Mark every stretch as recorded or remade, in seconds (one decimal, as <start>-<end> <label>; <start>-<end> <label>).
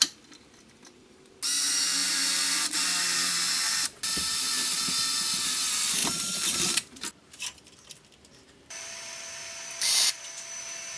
0.0-2.0 recorded; 2.0-3.3 remade; 3.3-6.0 recorded; 6.0-9.5 remade; 9.5-11.0 recorded